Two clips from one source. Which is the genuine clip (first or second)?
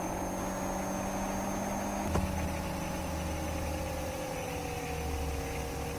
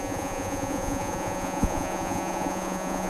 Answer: first